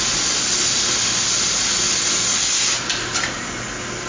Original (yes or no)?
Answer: yes